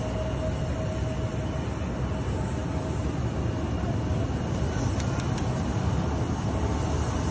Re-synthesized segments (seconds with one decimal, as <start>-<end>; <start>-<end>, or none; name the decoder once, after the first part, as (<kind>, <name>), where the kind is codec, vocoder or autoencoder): none